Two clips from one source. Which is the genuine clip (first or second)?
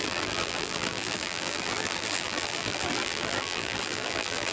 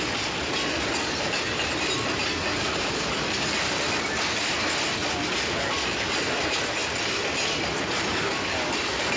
second